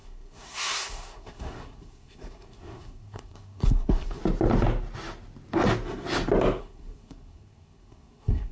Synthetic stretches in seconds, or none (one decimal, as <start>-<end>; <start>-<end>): 0.0-4.2; 6.6-8.5